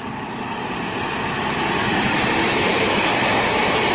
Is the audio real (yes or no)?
yes